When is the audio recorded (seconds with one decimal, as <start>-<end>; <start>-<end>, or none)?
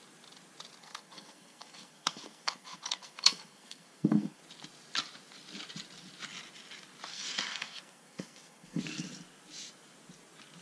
0.0-0.8; 4.4-7.1; 8.8-10.6